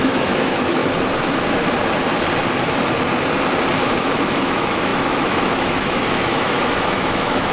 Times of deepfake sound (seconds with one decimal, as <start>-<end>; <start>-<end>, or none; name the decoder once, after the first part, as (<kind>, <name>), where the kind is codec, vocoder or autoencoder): 0.0-0.8 (autoencoder, DAC-VAE); 4.0-7.5